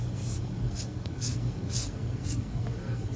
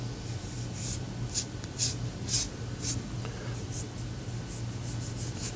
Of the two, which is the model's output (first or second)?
first